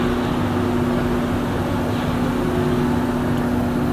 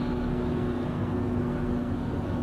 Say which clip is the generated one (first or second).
second